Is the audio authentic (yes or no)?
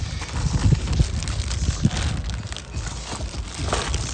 yes